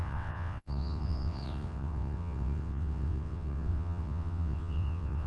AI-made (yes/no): yes